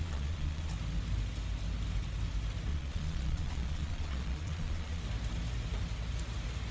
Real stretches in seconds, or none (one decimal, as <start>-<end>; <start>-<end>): 0.7-2.7; 5.0-6.7